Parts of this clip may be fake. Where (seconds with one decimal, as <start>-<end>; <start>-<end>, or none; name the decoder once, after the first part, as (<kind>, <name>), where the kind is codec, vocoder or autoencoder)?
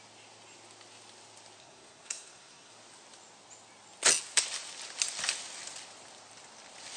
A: 1.6-2.7 (codec, SNAC)